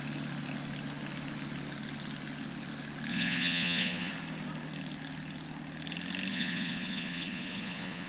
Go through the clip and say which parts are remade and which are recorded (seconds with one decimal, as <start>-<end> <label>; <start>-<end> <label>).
0.0-3.1 recorded; 3.1-4.1 remade; 4.1-6.3 recorded; 6.3-8.1 remade